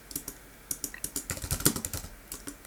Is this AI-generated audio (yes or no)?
no